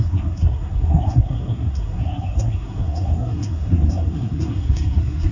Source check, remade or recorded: remade